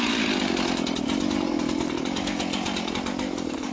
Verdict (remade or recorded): recorded